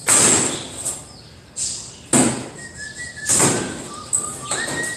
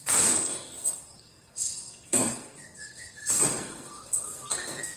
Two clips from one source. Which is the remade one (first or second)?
second